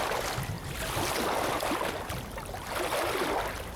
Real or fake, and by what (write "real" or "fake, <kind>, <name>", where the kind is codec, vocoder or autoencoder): real